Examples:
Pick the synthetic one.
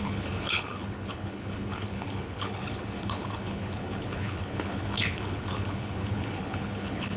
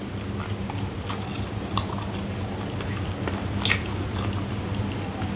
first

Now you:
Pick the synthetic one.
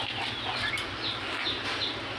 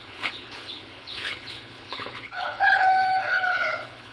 second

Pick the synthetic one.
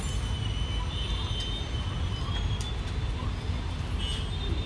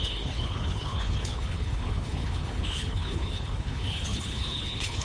second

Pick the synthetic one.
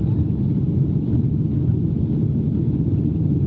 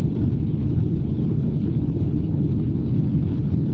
second